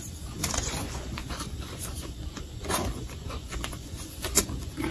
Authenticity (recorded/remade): remade